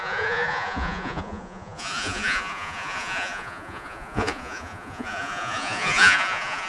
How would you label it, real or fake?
fake